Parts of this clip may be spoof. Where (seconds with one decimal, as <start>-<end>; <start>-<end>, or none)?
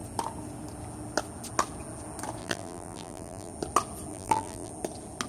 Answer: 2.4-3.5; 4.1-4.7